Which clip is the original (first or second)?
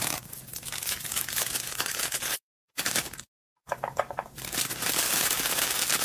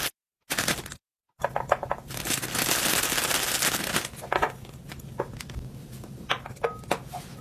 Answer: second